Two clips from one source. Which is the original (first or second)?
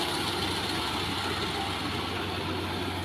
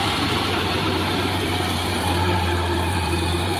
first